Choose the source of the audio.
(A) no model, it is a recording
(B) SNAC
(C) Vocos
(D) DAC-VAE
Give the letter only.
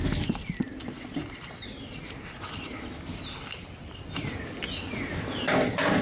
A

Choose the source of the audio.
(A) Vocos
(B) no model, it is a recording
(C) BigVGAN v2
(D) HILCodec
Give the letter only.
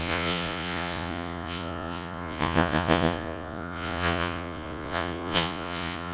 A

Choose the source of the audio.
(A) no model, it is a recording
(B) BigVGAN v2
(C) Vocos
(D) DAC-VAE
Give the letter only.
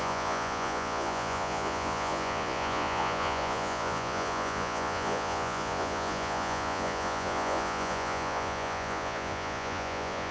C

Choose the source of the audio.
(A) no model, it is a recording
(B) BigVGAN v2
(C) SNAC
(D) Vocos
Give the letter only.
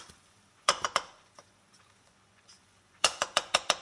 D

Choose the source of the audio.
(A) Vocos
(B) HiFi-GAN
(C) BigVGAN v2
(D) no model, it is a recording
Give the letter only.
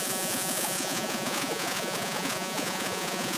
A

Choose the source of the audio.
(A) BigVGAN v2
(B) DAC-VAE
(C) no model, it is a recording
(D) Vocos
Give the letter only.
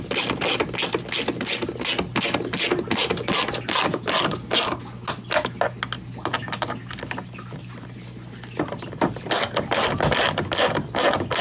C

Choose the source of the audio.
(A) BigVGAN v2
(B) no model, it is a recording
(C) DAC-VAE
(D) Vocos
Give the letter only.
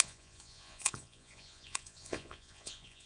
D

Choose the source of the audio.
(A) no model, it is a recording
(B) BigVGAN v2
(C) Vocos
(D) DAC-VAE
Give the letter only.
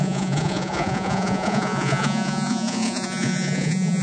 C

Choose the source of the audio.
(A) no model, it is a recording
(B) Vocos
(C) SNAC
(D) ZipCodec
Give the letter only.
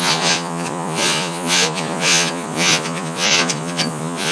B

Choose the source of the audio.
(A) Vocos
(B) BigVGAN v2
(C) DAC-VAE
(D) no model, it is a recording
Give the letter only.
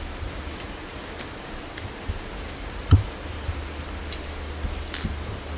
D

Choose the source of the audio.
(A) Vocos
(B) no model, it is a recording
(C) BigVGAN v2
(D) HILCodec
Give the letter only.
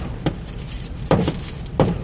B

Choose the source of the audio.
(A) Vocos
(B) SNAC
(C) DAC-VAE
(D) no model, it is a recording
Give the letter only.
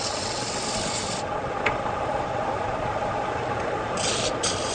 D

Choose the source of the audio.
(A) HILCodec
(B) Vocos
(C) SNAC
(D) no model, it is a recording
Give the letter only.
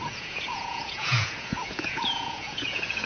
B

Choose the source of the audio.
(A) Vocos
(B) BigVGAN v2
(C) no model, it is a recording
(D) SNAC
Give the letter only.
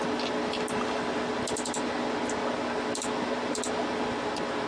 C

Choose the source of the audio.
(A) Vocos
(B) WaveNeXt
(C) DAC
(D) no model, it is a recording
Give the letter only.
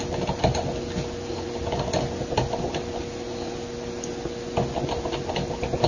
D